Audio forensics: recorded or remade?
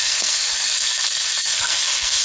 remade